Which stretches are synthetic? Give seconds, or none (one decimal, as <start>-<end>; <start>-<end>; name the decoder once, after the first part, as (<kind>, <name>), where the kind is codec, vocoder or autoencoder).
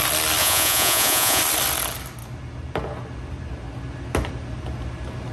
0.4-1.4 (vocoder, Vocos)